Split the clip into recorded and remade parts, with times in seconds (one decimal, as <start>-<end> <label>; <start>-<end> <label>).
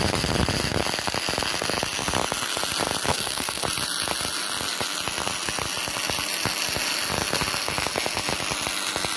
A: 0.0-3.1 recorded; 3.1-3.6 remade; 3.6-9.2 recorded